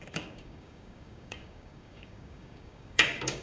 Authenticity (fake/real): fake